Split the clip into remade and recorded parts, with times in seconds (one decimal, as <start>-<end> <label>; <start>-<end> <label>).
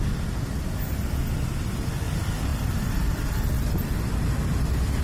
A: 0.0-2.5 recorded; 2.5-4.0 remade; 4.0-5.0 recorded